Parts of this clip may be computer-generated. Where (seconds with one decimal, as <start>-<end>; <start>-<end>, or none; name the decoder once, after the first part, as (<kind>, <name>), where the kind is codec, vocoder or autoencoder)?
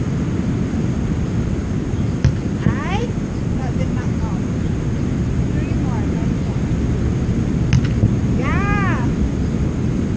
1.6-3.8 (vocoder, BigVGAN v2)